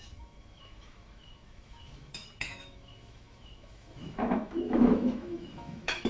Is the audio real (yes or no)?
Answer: no